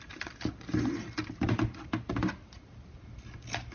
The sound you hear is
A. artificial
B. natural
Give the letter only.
B